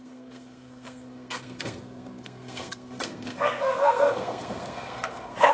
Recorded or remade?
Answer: remade